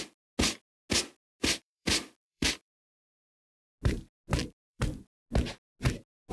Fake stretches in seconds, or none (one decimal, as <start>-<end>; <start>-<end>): 1.4-3.1; 4.4-5.0